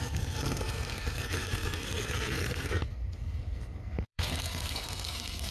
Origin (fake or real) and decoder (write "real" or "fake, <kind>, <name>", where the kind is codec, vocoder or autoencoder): fake, codec, SNAC